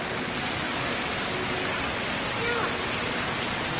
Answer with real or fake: real